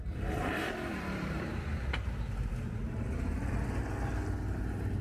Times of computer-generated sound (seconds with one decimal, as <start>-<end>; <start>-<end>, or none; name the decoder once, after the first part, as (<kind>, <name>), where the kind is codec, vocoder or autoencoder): 0.4-3.4 (vocoder, BigVGAN v2)